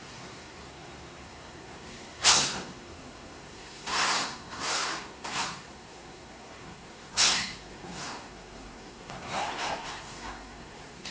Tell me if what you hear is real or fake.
fake